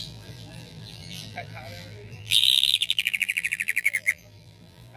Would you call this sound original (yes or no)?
no